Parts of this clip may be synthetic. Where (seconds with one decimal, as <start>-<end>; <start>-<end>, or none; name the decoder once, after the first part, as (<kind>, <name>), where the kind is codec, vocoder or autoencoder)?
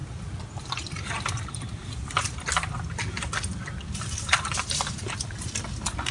0.6-1.8 (vocoder, BigVGAN v2); 3.8-6.1